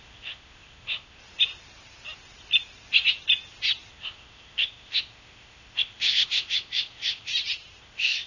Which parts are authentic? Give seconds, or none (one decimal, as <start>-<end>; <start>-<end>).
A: 1.2-3.9; 7.3-7.8